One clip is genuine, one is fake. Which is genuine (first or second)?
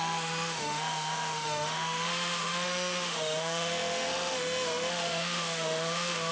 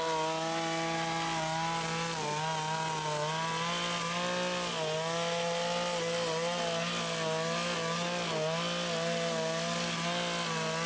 second